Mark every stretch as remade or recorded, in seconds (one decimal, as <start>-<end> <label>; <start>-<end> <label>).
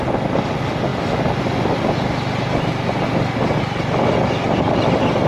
0.0-5.3 recorded